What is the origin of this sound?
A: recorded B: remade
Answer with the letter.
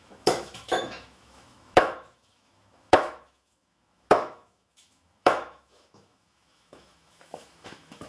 B